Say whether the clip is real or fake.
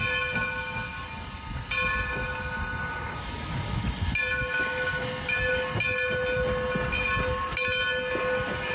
real